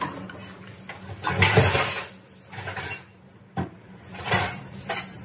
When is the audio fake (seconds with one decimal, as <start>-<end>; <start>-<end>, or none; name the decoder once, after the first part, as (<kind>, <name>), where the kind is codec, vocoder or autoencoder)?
0.0-0.4 (vocoder, BigVGAN v2); 3.5-5.2